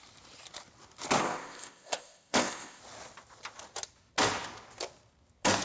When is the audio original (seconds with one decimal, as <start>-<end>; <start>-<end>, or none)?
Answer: 0.0-1.2; 2.8-5.6